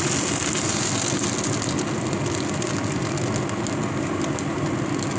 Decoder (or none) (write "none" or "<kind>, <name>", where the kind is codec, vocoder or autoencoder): none